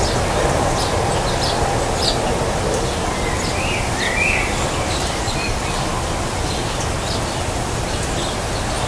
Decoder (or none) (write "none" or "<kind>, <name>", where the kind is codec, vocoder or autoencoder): none